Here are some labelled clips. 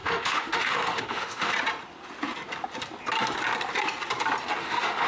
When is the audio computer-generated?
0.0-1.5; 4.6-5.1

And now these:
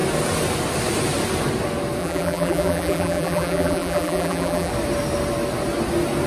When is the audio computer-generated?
2.0-4.7

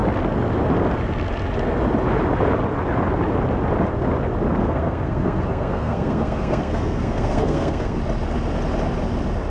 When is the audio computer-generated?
4.6-8.0

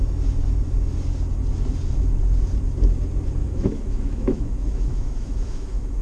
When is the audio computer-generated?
3.4-6.0

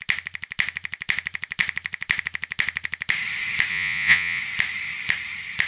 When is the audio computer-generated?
3.7-4.4

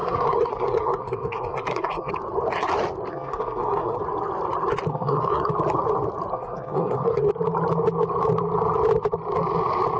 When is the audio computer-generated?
0.0-2.1; 3.1-4.0; 4.9-5.5; 6.3-7.3